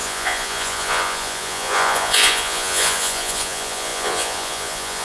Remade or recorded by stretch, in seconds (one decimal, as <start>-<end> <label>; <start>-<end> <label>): 0.0-5.0 remade